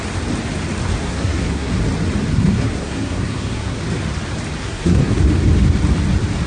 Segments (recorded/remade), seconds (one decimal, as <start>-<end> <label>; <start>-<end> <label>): 0.0-1.0 recorded; 1.0-1.8 remade; 1.8-2.3 recorded; 2.3-3.8 remade; 3.8-4.6 recorded; 4.6-5.2 remade; 5.2-6.5 recorded